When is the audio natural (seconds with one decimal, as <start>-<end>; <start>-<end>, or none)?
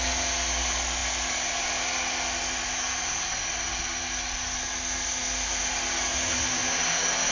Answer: 0.0-7.3